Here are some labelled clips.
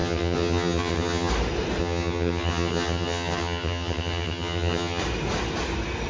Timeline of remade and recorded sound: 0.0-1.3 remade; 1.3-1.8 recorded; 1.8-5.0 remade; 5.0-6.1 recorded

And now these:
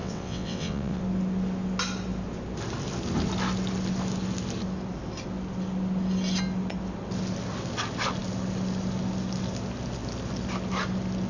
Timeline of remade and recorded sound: 0.0-1.0 remade; 1.0-11.3 recorded

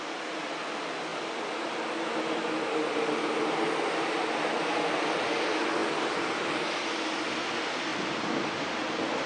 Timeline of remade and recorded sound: 0.0-9.3 recorded